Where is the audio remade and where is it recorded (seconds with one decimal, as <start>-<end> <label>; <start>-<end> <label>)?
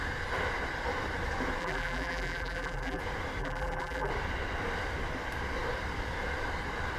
0.0-1.6 recorded; 1.6-3.0 remade; 3.0-3.4 recorded; 3.4-4.1 remade; 4.1-7.0 recorded